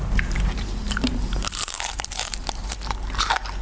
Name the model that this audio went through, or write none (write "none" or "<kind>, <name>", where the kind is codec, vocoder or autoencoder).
vocoder, BigVGAN v2